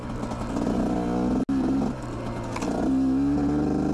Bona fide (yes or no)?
yes